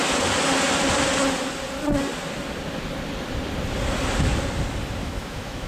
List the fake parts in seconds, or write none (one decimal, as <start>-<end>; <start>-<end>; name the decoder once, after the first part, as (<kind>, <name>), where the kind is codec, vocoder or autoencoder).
5.0-5.7 (autoencoder, DAC-VAE)

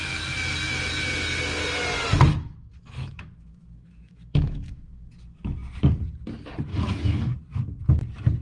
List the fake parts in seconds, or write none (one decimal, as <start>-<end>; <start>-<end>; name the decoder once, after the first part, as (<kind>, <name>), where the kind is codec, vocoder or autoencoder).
2.3-5.1 (autoencoder, DAC-VAE); 6.7-7.3

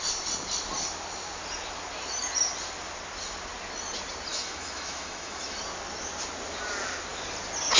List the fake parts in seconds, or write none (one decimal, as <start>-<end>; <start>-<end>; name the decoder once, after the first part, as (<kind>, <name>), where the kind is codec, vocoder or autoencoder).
4.3-5.6 (autoencoder, DAC-VAE)

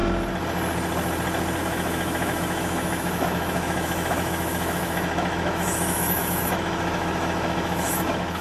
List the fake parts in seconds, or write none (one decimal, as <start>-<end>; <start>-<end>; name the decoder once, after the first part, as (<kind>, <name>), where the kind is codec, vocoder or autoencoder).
1.6-8.4 (autoencoder, DAC-VAE)

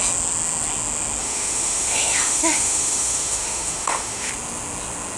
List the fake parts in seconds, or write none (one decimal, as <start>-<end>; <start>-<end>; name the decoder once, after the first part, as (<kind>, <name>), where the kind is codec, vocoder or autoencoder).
1.2-4.3 (autoencoder, DAC-VAE)

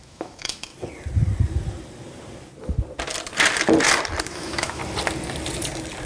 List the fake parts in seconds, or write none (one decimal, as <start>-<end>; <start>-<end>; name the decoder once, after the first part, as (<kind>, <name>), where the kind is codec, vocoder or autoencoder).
0.0-0.7 (autoencoder, DAC-VAE); 4.2-4.8

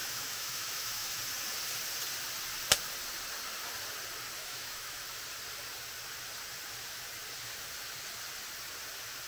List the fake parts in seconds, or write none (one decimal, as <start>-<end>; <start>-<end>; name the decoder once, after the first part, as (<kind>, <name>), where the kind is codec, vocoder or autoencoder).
0.0-1.2 (autoencoder, DAC-VAE); 4.4-5.0